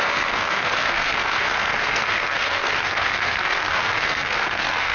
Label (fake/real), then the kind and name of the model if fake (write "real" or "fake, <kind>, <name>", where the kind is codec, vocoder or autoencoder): fake, codec, SNAC